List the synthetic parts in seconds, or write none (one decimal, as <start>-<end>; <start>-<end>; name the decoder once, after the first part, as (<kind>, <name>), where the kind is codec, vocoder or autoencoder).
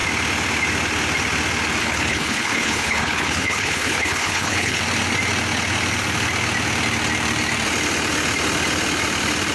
1.8-4.8 (codec, HILCodec)